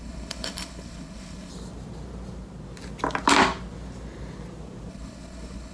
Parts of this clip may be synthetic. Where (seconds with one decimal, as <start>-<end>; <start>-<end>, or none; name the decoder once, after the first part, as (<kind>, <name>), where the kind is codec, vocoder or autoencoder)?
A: 0.0-1.5 (codec, HILCodec); 4.9-5.7